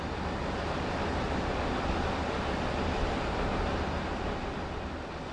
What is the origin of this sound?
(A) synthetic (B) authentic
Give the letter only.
B